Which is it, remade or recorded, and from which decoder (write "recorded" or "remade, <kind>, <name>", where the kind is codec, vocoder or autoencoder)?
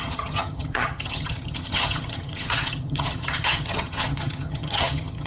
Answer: remade, vocoder, HiFi-GAN